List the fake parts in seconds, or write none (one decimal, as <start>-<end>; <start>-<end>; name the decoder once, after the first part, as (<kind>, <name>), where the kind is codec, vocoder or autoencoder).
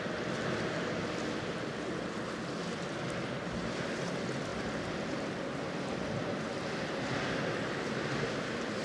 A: none